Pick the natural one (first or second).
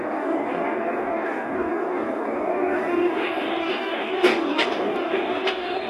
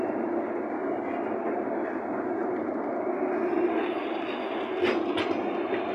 second